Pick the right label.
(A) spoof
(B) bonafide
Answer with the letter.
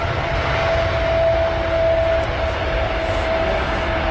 B